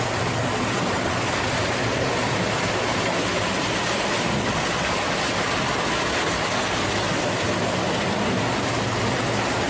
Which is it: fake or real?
real